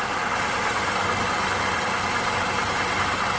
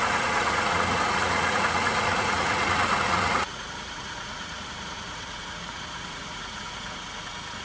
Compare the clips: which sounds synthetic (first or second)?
second